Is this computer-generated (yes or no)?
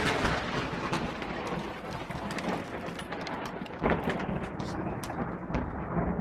no